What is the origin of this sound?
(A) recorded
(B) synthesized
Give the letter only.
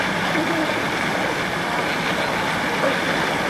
A